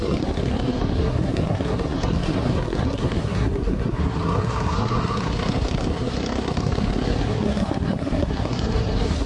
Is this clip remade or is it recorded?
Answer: remade